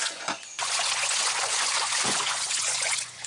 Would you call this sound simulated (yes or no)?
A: yes